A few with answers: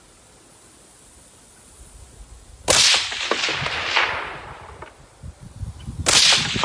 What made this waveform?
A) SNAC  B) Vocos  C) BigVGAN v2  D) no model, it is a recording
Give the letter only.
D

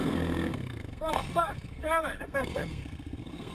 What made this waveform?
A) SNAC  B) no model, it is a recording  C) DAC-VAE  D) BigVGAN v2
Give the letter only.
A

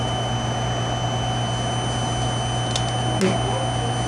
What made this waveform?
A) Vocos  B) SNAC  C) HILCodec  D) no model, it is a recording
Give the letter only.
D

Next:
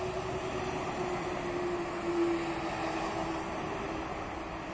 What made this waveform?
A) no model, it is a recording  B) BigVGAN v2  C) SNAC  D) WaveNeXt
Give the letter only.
A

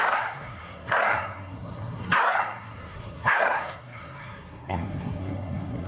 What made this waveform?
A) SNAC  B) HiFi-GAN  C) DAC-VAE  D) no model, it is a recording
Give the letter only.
A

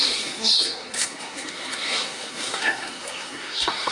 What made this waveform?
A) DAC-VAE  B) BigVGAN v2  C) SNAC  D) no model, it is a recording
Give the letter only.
C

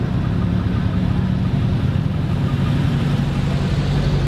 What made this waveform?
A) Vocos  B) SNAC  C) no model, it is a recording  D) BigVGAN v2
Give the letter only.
C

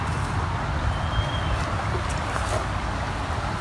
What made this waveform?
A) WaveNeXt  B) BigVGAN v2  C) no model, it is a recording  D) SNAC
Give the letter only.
C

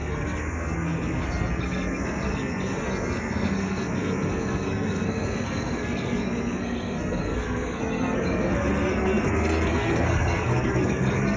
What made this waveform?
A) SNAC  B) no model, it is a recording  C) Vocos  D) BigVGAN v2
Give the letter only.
A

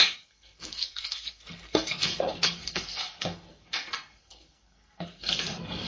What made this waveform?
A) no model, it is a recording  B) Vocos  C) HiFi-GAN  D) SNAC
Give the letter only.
D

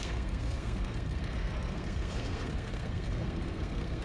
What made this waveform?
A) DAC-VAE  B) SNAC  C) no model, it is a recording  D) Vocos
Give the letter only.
B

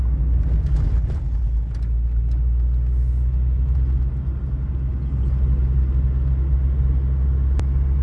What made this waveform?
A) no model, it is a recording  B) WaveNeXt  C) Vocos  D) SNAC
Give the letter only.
A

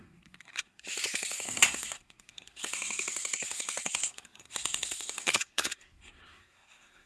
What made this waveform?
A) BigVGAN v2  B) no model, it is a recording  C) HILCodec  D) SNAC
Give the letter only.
D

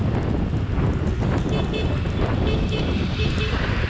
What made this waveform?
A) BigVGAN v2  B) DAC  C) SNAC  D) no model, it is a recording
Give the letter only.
D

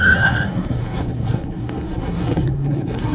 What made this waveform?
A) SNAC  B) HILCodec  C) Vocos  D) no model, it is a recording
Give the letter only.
A